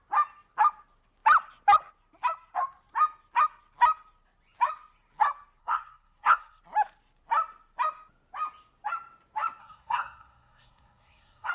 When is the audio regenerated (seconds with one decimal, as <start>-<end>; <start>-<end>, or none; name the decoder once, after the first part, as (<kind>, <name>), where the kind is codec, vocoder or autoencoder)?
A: 5.6-6.6 (codec, SNAC); 9.6-11.5